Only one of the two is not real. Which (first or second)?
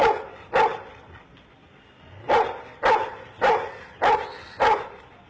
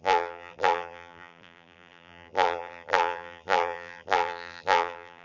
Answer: second